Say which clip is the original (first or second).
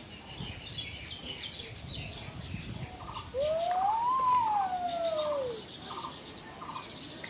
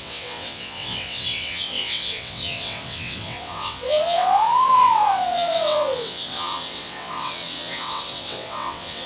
first